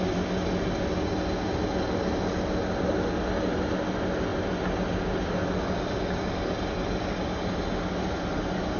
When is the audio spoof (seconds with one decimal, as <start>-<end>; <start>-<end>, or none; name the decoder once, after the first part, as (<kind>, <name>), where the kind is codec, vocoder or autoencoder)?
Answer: none